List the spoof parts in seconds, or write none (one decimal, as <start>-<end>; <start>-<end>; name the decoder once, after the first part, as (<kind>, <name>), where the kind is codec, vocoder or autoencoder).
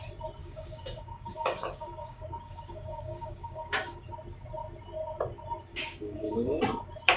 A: 0.4-4.1 (codec, DAC); 5.7-6.6